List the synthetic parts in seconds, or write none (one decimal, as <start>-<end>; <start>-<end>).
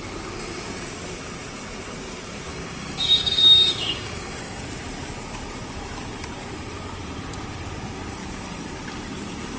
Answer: 2.5-4.6